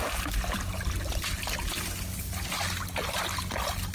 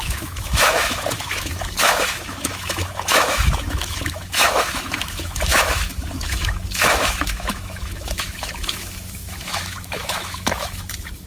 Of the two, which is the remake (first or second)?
second